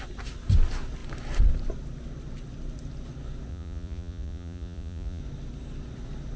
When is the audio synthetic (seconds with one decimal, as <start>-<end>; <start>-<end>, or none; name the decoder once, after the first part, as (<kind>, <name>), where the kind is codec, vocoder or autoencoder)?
3.5-5.2 (vocoder, Vocos)